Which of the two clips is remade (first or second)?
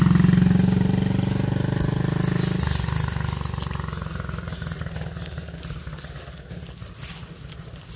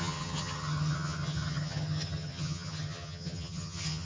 second